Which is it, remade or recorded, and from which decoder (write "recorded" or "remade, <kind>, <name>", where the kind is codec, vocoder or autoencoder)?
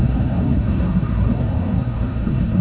remade, codec, SNAC